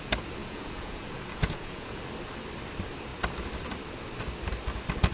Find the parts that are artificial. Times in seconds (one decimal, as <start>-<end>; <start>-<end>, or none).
0.4-2.0